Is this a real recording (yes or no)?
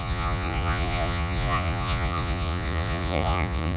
no